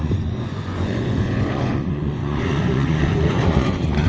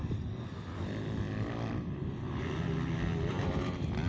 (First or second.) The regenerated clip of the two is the first